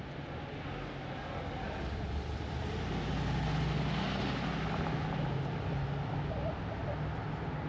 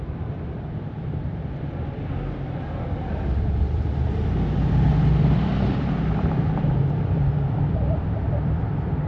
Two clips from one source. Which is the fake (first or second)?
second